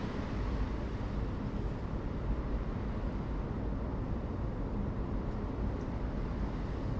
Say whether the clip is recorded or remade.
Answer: recorded